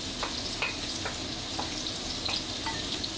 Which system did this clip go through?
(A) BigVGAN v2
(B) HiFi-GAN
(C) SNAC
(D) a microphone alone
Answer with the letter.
D